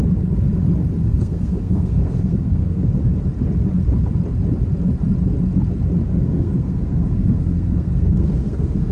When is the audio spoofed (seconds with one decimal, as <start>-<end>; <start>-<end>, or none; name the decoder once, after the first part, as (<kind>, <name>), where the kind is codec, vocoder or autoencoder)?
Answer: 1.0-2.9 (codec, SNAC); 6.1-8.9

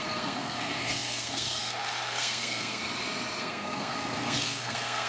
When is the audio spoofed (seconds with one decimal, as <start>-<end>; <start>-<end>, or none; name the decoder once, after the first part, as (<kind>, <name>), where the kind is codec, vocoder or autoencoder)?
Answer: 0.0-2.8 (codec, SNAC); 3.4-5.1

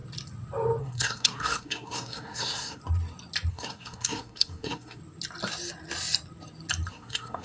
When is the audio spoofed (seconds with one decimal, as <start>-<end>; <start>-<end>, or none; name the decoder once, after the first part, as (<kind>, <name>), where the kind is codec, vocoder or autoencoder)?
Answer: 0.8-2.8 (codec, SNAC); 3.5-5.0; 6.9-7.4

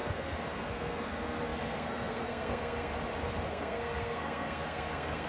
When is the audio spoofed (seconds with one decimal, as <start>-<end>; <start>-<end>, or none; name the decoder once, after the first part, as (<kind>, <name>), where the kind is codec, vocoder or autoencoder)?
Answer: 0.0-2.9 (codec, SNAC); 3.5-5.3

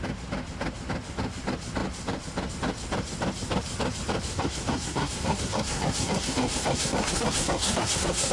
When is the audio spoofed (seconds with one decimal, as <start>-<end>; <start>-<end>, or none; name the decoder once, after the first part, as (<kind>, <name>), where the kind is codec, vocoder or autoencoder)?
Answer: 4.3-8.3 (codec, SNAC)